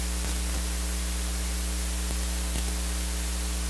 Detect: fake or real real